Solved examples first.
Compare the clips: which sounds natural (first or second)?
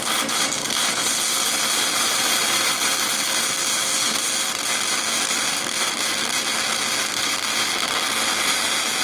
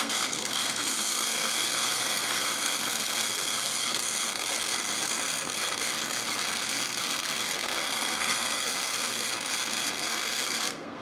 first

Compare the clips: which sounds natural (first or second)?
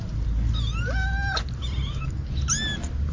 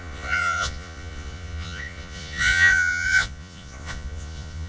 first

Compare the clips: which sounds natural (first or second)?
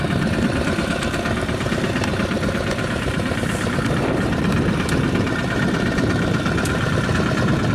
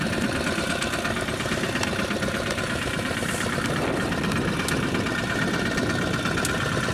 second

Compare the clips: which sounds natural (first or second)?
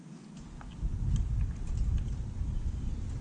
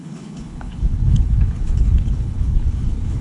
first